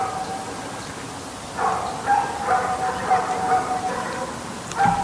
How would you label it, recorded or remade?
recorded